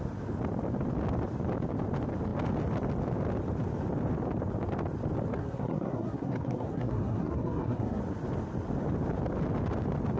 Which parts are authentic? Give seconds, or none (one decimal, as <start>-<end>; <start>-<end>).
0.0-5.3; 8.0-10.2

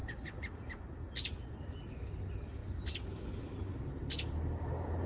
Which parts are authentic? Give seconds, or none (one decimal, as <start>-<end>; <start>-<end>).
0.0-5.1

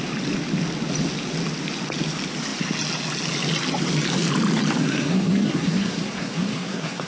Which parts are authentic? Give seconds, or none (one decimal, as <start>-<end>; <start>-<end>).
0.0-4.8

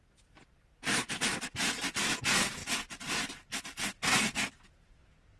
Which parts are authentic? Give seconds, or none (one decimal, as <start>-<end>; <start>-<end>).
0.0-5.4

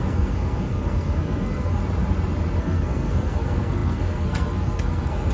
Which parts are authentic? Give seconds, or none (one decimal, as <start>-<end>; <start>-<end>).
1.8-2.6

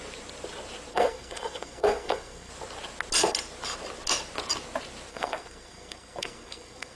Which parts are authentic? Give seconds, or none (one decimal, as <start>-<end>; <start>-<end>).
0.0-0.9; 2.5-5.1

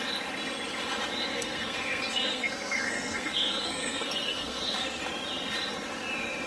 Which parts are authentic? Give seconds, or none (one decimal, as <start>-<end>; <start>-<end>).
0.0-1.3; 5.0-6.5

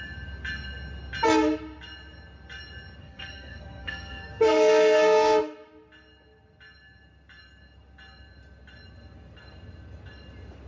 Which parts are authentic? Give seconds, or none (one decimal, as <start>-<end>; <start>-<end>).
0.0-3.0; 5.4-10.7